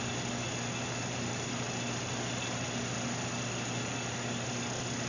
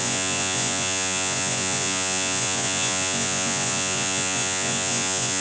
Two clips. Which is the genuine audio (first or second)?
first